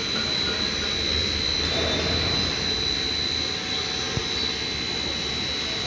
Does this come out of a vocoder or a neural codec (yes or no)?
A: no